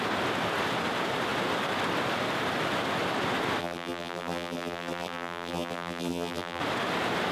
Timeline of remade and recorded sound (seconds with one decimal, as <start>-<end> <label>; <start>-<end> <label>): 0.0-3.6 recorded; 3.6-6.6 remade; 6.6-7.3 recorded